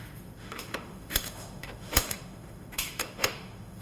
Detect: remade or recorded remade